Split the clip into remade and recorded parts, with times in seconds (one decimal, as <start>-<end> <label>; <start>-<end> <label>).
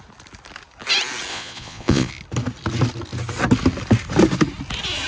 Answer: 0.0-1.3 recorded; 1.3-2.1 remade; 2.1-5.1 recorded